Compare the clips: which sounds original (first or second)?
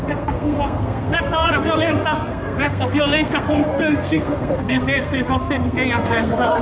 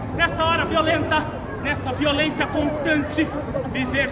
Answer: second